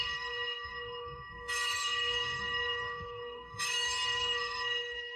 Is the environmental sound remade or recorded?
remade